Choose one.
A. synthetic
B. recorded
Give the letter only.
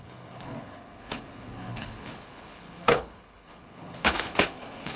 A